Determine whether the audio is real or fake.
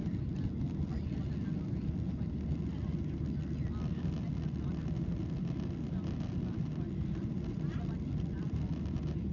real